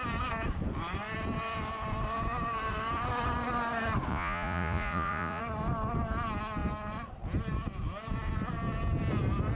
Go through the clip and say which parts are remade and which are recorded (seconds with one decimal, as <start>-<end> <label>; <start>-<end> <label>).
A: 0.0-4.1 recorded; 4.1-5.4 remade; 5.4-9.6 recorded